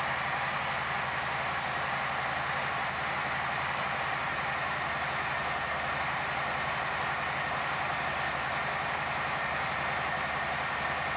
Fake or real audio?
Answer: real